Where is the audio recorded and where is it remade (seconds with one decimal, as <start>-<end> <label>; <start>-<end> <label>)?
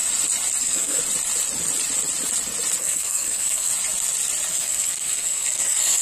0.0-0.6 recorded; 0.6-1.0 remade; 1.0-2.8 recorded; 2.8-3.7 remade; 3.7-4.5 recorded; 4.5-6.0 remade